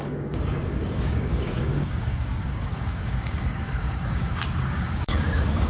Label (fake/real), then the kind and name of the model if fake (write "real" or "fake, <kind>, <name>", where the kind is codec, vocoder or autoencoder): fake, codec, DAC